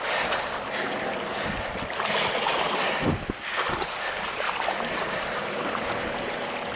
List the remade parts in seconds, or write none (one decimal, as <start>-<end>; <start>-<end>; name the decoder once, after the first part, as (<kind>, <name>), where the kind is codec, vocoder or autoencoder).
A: none